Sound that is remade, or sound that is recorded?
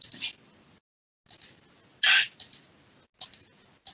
recorded